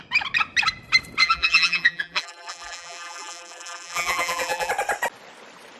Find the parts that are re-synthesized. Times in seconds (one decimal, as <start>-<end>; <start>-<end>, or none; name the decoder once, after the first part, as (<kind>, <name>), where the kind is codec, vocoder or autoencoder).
1.2-4.7 (vocoder, BigVGAN v2)